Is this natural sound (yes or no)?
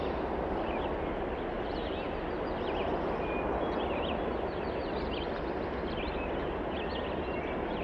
yes